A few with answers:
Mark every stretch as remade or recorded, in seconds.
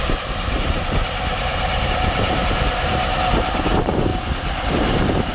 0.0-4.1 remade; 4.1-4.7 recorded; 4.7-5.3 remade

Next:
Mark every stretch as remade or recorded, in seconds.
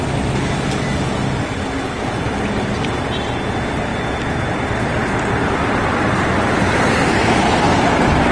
0.0-3.9 remade; 3.9-4.4 recorded; 4.4-8.3 remade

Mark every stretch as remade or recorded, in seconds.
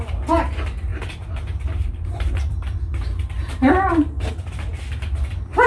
0.0-0.9 recorded; 0.9-4.3 remade; 4.3-5.7 recorded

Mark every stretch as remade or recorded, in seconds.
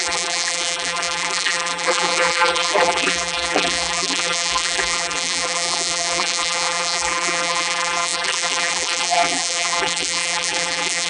0.0-11.1 remade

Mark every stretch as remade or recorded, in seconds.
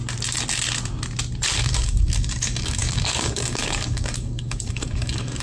0.0-1.6 recorded; 1.6-5.4 remade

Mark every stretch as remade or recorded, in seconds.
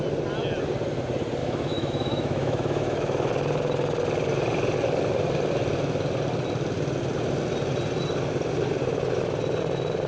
0.0-1.4 recorded; 1.4-3.3 remade; 3.3-10.1 recorded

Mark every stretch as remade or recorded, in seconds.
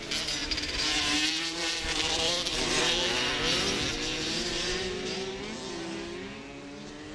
0.0-0.4 recorded; 0.4-2.8 remade; 2.8-3.9 recorded; 3.9-5.4 remade; 5.4-7.1 recorded